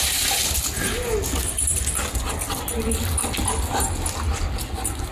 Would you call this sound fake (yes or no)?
no